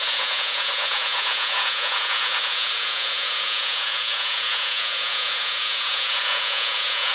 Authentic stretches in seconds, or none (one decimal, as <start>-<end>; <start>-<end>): none